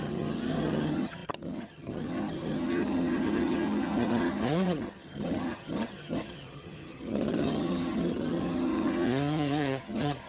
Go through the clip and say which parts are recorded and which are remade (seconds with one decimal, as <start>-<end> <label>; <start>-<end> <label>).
0.0-10.3 remade